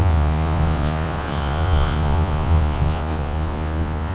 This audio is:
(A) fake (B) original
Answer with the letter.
A